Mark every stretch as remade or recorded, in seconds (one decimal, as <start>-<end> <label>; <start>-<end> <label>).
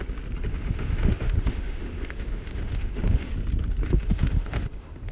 0.0-0.5 recorded; 0.5-3.3 remade; 3.3-3.8 recorded; 3.8-5.1 remade